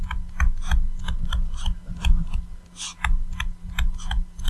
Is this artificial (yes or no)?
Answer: no